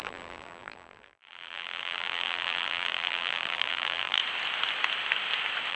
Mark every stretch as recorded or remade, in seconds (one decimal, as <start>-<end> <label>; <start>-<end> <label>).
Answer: 0.0-4.2 remade; 4.2-5.7 recorded